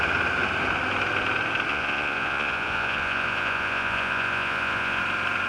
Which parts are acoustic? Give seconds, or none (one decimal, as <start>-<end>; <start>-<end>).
0.0-1.7; 5.0-5.5